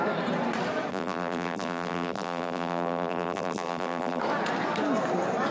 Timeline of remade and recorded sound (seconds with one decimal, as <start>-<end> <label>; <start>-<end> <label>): 0.0-0.9 recorded; 0.9-4.2 remade; 4.2-5.5 recorded